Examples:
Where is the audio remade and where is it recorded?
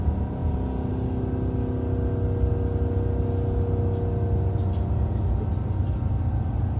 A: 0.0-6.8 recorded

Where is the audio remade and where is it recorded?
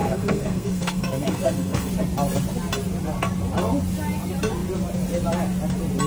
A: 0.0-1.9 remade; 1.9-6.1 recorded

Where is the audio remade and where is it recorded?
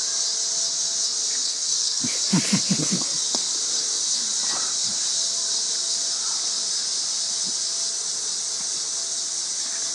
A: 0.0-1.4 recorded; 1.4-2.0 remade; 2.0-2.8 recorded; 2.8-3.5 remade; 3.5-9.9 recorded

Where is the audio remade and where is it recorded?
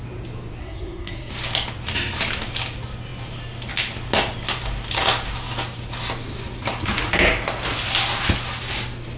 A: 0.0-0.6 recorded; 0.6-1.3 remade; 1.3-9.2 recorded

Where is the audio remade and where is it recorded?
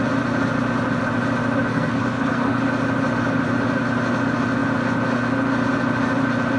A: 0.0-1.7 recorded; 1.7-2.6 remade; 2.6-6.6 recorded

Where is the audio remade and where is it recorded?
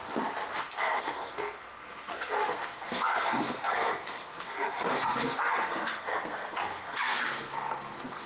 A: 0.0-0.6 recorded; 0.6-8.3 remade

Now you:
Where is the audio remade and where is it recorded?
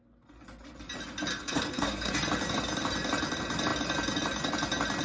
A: 0.0-1.3 recorded; 1.3-2.1 remade; 2.1-5.0 recorded